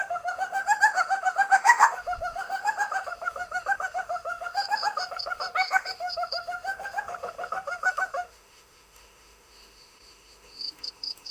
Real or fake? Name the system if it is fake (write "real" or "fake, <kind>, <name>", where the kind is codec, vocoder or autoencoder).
fake, autoencoder, DAC-VAE